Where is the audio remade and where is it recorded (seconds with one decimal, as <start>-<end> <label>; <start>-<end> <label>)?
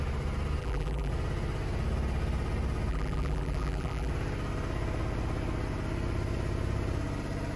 0.0-0.6 recorded; 0.6-1.1 remade; 1.1-2.9 recorded; 2.9-4.1 remade; 4.1-7.6 recorded